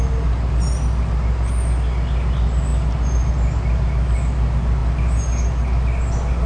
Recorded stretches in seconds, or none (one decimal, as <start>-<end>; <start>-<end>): 0.0-6.5